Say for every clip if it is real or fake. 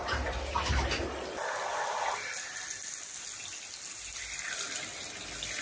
real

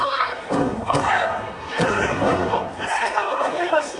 fake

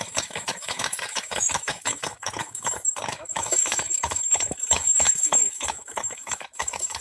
fake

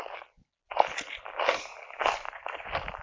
real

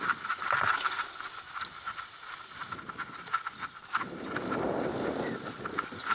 real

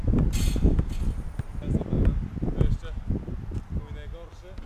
real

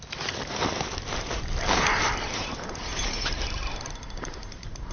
real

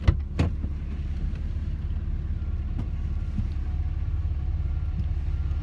real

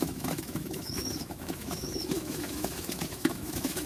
fake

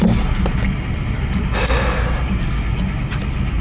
real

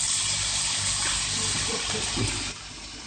real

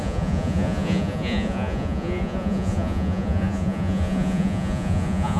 fake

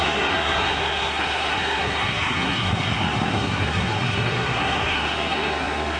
fake